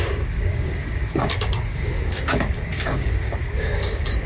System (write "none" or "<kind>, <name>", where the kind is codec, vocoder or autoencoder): codec, DAC